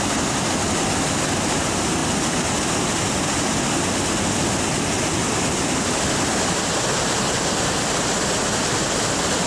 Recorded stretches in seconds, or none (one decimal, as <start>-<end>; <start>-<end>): 0.0-9.5